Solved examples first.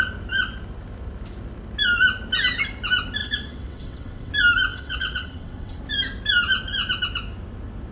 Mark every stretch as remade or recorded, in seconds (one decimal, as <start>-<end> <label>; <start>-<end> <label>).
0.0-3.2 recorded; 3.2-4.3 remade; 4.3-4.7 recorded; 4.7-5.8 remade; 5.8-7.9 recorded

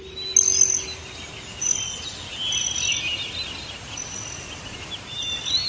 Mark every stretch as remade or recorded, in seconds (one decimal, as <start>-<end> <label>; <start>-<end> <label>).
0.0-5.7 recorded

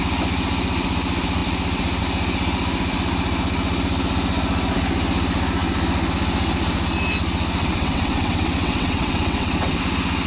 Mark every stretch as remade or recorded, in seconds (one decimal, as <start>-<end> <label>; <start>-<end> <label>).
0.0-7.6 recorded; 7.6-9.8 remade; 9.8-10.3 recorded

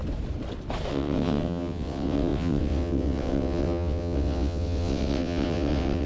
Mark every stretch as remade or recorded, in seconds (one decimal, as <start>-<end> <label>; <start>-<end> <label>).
0.0-0.9 recorded; 0.9-6.1 remade